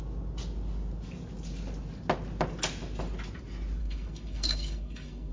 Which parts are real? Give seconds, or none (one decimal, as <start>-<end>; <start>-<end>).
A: 0.0-3.8